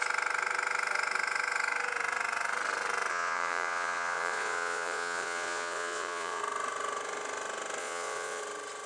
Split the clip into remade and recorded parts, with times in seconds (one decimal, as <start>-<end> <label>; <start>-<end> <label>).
0.0-3.1 recorded; 3.1-6.4 remade; 6.4-7.8 recorded; 7.8-8.4 remade; 8.4-8.9 recorded